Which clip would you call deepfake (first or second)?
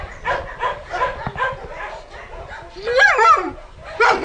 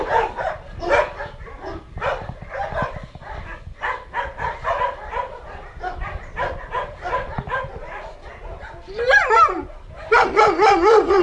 second